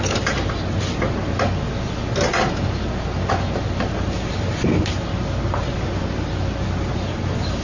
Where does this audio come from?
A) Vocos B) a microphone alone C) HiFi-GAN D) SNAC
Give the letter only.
B